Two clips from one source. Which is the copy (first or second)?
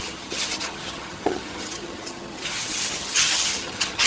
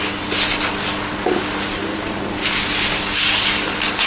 first